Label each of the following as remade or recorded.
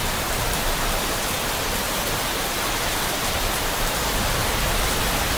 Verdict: remade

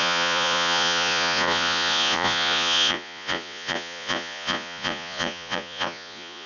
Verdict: remade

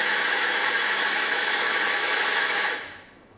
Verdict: remade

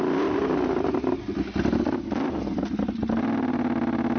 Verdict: recorded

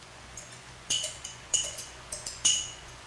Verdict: remade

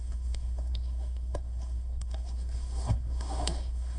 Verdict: remade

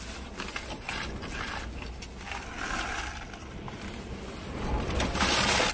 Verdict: recorded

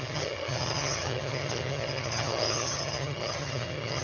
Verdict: remade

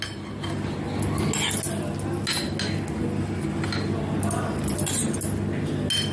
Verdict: recorded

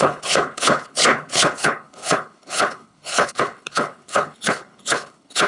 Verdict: remade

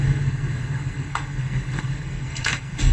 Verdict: remade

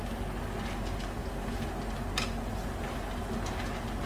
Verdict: recorded